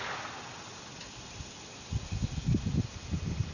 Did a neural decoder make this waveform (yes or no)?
no